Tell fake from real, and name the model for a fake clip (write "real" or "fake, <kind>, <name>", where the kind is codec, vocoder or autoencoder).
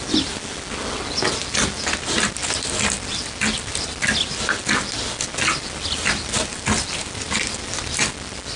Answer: real